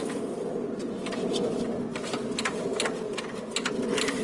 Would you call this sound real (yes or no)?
yes